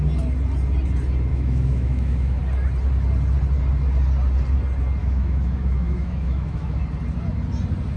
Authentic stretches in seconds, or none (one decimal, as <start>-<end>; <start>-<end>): 0.0-1.3; 2.4-5.0; 6.8-8.0